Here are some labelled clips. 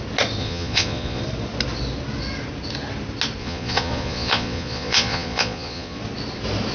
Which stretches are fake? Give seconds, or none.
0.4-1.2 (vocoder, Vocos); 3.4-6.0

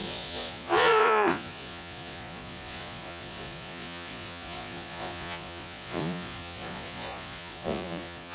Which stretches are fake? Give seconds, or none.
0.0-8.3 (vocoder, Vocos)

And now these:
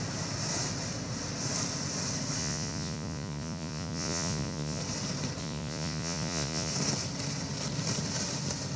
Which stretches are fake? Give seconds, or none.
2.4-4.8 (vocoder, Vocos); 5.4-6.7

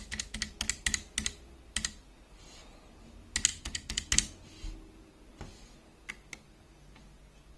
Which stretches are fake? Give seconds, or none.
3.5-4.1 (vocoder, Vocos)